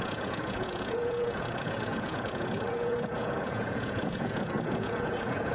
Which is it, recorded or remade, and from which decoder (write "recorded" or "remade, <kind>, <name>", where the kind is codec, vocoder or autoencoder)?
remade, vocoder, Vocos